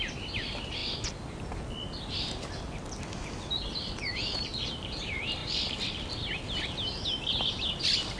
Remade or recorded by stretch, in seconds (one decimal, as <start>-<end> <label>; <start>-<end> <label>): 0.0-8.2 recorded